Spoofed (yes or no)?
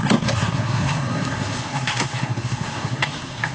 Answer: yes